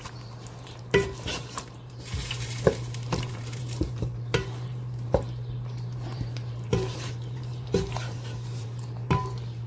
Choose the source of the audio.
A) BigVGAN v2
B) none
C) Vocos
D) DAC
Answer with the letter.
A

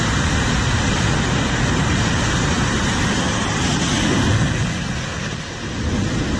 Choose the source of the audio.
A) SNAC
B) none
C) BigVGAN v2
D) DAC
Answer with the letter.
B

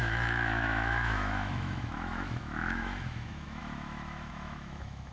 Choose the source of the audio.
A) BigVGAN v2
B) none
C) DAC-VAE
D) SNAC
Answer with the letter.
C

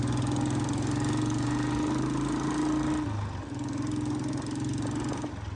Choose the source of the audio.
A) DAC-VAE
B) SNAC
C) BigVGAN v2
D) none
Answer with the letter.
D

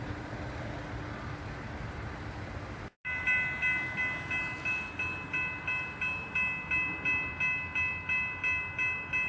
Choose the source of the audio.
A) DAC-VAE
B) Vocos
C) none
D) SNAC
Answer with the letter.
C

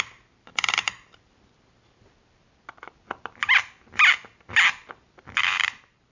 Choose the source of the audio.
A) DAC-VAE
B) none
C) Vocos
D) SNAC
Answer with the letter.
B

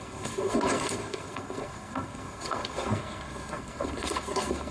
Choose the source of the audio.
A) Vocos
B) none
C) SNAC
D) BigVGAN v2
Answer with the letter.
C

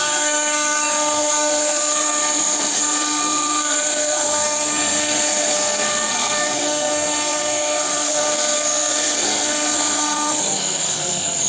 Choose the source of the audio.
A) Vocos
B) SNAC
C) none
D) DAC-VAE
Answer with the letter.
B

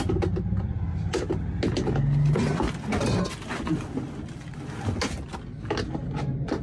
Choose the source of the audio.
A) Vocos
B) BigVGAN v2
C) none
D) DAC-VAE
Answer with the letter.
C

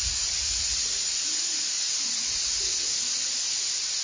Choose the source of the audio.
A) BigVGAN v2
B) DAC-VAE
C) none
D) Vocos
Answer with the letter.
C